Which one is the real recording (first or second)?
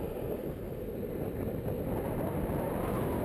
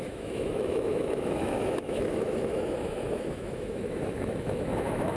first